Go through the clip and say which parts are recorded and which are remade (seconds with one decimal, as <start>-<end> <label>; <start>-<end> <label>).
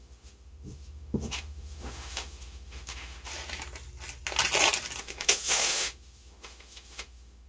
0.0-3.3 remade; 3.3-5.0 recorded; 5.0-7.5 remade